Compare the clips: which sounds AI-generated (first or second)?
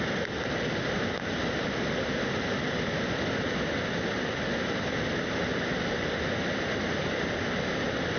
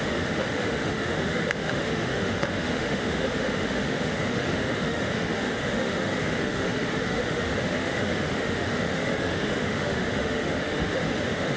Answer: second